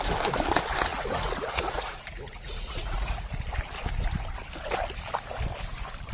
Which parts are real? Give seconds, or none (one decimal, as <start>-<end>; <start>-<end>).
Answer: 0.0-0.9; 3.3-6.1